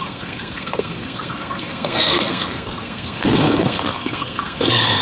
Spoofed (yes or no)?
yes